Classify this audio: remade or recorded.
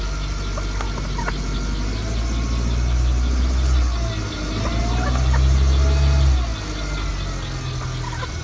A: recorded